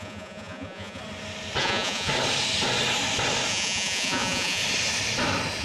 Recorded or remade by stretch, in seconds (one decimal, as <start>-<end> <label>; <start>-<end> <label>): 0.0-1.0 remade; 1.0-1.6 recorded; 1.6-2.1 remade; 2.1-3.5 recorded; 3.5-4.6 remade; 4.6-5.6 recorded